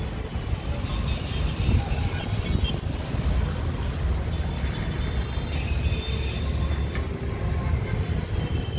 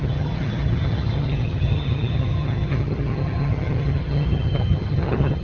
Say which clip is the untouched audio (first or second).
first